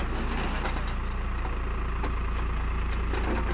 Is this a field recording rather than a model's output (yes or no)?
yes